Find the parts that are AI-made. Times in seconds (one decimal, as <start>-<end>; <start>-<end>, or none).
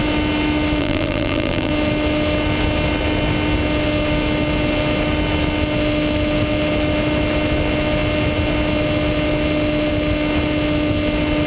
0.8-1.7